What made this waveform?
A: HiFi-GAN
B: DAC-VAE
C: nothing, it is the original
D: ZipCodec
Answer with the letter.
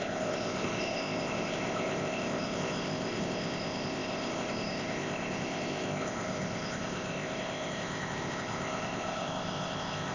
D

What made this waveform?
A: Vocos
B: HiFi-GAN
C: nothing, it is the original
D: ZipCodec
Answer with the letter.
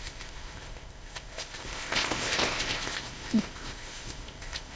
D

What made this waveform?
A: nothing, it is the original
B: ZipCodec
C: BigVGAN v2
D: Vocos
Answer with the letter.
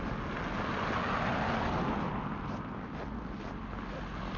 A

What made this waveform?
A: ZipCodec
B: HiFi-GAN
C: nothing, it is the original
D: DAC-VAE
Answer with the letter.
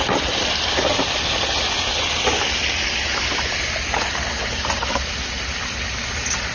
C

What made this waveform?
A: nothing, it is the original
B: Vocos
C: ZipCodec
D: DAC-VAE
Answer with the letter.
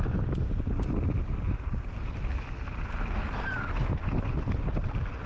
A